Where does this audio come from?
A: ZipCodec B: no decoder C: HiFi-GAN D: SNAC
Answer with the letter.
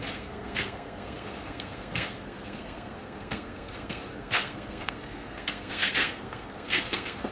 D